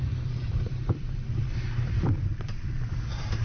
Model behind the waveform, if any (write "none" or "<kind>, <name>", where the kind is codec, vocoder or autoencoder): vocoder, BigVGAN v2